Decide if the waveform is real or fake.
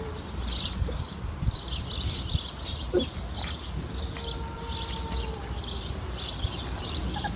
real